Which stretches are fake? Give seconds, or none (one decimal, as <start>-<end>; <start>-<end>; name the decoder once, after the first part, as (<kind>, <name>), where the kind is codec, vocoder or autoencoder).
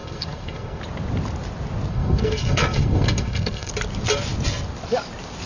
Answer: 0.0-0.8 (codec, SNAC); 1.9-3.7